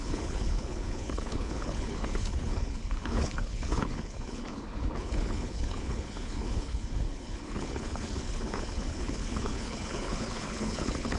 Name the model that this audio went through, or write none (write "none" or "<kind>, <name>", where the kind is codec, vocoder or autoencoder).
codec, HILCodec